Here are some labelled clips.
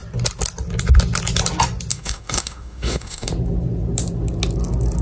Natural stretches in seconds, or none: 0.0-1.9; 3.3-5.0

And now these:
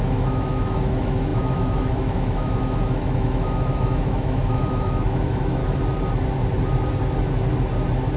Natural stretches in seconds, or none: 5.6-8.2

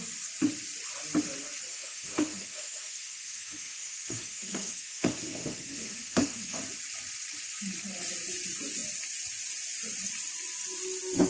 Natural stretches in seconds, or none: 0.0-1.7; 6.6-11.3

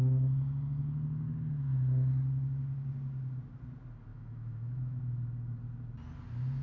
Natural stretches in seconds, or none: 0.0-4.1; 5.0-6.6

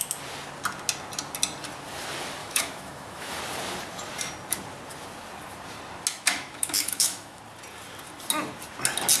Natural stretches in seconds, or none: 0.0-2.4; 3.4-6.1; 7.4-9.2

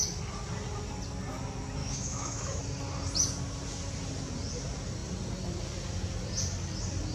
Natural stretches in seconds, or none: 0.0-1.8; 2.6-7.1

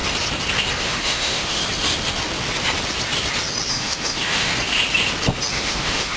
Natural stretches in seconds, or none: 0.0-0.8; 1.6-3.7; 4.5-5.5

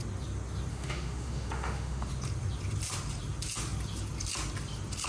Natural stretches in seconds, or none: 0.0-0.7; 2.1-5.1